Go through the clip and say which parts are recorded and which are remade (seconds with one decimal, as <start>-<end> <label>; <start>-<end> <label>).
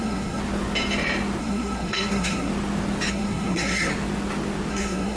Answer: 0.0-0.4 remade; 0.4-1.4 recorded; 1.4-2.5 remade; 2.5-3.1 recorded; 3.1-3.9 remade; 3.9-4.7 recorded; 4.7-5.2 remade